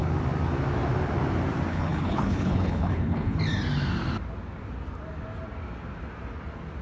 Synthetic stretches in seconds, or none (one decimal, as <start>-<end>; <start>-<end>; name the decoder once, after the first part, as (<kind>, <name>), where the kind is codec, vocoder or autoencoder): 1.7-3.4 (codec, HILCodec)